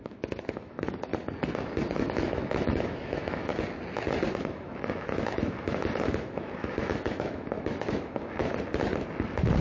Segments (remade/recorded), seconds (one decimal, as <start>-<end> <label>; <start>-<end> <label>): 0.0-1.1 remade; 1.1-2.0 recorded; 2.0-3.5 remade; 3.5-4.5 recorded; 4.5-8.5 remade; 8.5-9.6 recorded